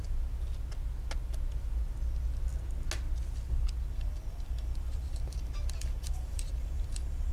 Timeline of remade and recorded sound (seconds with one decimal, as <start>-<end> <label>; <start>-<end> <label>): 0.0-3.9 recorded; 3.9-7.3 remade